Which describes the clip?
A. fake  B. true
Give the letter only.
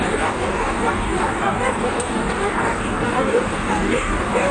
A